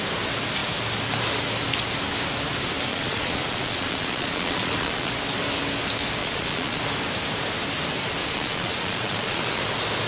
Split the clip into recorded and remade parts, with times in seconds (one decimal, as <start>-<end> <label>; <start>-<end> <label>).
0.0-2.9 recorded; 2.9-5.1 remade; 5.1-6.2 recorded; 6.2-6.8 remade; 6.8-8.2 recorded; 8.2-9.6 remade; 9.6-10.1 recorded